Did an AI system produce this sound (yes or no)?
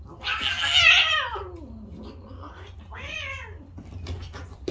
no